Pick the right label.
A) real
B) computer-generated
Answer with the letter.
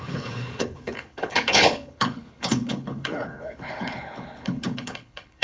B